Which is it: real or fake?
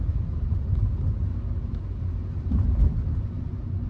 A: real